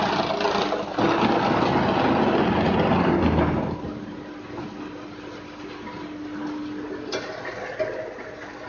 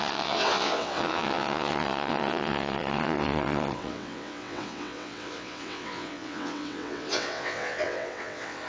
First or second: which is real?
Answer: first